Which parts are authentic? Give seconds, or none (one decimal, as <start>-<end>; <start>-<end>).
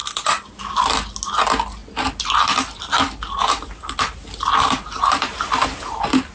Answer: 0.0-6.3